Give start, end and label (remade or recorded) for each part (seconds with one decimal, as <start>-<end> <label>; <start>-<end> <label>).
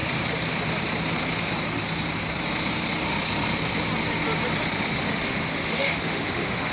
0.0-5.1 recorded; 5.1-6.7 remade